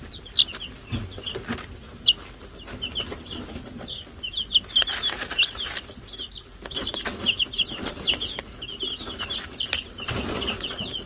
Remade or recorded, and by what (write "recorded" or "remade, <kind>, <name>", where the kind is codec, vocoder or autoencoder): recorded